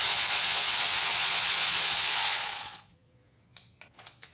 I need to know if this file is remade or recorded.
remade